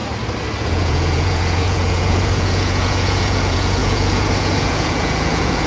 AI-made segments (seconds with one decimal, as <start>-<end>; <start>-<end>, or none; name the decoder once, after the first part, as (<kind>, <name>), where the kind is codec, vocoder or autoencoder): 0.6-5.7 (vocoder, Vocos)